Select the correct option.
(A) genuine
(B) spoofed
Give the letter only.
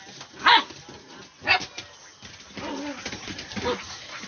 A